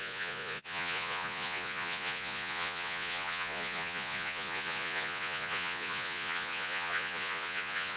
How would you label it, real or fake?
fake